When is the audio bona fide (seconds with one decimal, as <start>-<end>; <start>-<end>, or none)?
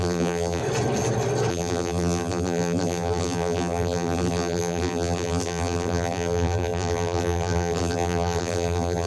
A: 0.6-1.5